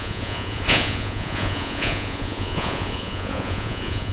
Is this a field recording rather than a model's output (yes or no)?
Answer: no